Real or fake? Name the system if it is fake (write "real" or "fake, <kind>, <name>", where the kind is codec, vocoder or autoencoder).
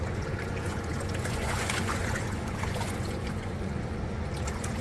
fake, vocoder, Vocos